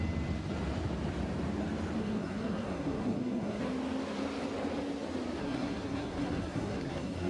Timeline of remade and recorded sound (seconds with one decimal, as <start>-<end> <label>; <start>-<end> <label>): 0.0-2.0 recorded; 2.0-3.6 remade; 3.6-5.4 recorded; 5.4-7.3 remade